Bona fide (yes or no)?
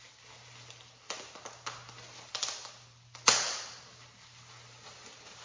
yes